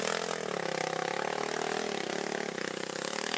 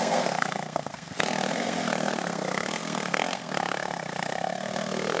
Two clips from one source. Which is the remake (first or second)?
second